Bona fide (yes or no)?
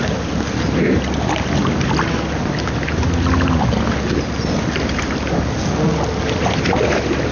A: yes